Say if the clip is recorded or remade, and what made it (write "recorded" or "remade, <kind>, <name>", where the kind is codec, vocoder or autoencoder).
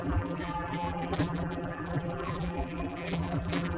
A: remade, vocoder, BigVGAN v2